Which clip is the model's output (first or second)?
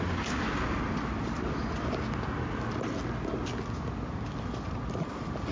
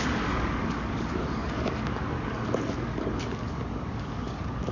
second